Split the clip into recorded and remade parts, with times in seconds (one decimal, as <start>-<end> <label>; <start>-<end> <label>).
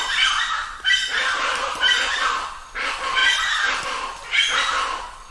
0.0-5.3 recorded